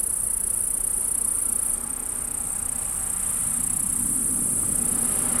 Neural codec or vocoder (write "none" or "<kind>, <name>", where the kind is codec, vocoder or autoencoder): none